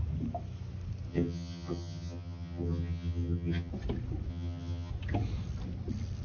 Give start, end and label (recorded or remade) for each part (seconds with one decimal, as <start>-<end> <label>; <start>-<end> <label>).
0.0-1.1 recorded; 1.1-3.7 remade; 3.7-4.3 recorded; 4.3-4.9 remade; 4.9-6.2 recorded